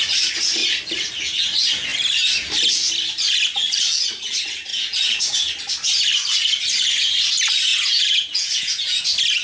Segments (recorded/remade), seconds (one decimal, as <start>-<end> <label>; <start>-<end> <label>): 0.0-4.7 recorded; 4.7-5.5 remade; 5.5-7.7 recorded; 7.7-9.0 remade; 9.0-9.4 recorded